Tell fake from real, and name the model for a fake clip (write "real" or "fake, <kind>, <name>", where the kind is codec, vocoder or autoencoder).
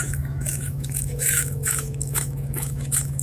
fake, autoencoder, DAC-VAE